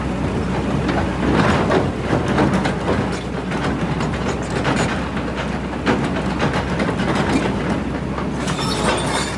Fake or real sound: real